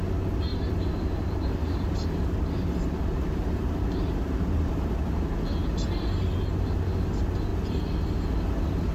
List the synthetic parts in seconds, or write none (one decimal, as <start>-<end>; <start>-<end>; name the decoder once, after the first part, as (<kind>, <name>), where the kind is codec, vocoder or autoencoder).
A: 0.5-4.9 (vocoder, BigVGAN v2)